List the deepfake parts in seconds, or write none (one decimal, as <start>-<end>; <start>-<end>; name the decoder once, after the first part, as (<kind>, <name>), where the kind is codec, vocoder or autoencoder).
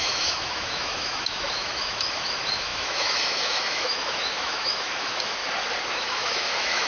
0.0-5.4 (autoencoder, DAC-VAE); 5.9-6.9